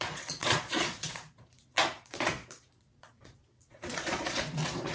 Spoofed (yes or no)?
yes